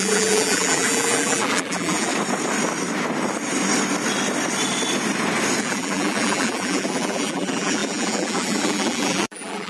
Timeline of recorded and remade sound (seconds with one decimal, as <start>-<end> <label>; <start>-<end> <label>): 0.0-2.1 remade; 2.1-5.6 recorded; 5.6-9.7 remade